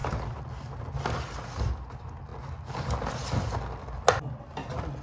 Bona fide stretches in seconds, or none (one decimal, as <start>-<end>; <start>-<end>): 0.0-2.3; 3.1-5.0